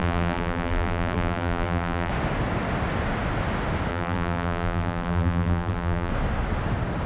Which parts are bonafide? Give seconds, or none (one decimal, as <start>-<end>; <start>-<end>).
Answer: 2.1-3.9; 6.1-7.1